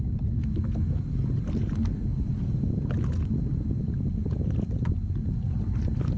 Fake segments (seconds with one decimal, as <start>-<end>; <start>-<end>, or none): none